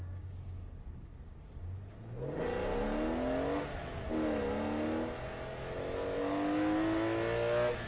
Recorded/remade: recorded